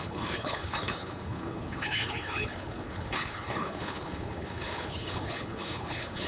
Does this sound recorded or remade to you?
remade